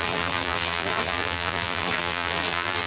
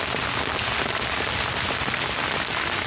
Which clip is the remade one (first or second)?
first